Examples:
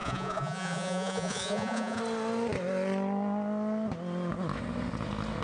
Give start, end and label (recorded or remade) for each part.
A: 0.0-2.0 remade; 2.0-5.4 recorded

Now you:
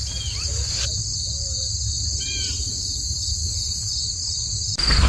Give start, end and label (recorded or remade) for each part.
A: 0.0-5.1 recorded

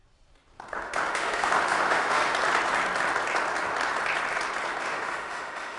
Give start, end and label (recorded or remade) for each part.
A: 0.0-0.8 recorded; 0.8-2.2 remade; 2.2-4.8 recorded; 4.8-5.8 remade

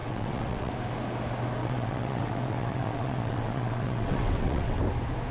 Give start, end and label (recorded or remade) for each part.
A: 0.0-0.7 remade; 0.7-1.6 recorded; 1.6-4.8 remade; 4.8-5.3 recorded

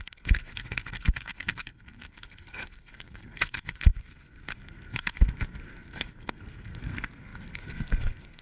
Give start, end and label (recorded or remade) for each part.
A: 0.0-8.4 remade